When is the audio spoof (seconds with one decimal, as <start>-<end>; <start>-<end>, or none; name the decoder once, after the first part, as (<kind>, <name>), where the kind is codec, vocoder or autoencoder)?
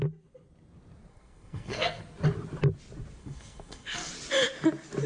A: 1.1-2.0 (codec, SNAC); 3.2-4.1